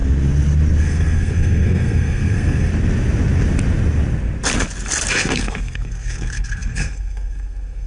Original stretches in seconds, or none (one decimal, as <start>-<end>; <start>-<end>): 0.0-0.8; 2.7-5.1